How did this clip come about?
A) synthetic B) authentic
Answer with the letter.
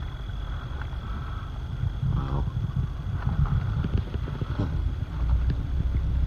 B